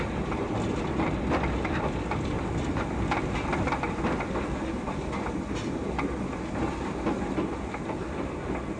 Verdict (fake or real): real